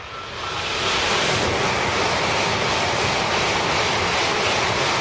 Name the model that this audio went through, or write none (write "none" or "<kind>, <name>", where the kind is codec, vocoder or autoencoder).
none